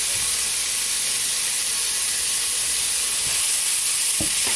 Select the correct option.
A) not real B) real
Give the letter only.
B